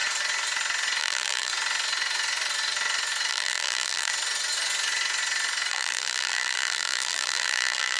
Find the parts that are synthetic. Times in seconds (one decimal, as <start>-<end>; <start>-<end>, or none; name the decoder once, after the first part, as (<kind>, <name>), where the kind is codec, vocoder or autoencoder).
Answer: 1.0-1.5 (vocoder, BigVGAN v2); 3.3-4.1; 5.7-8.0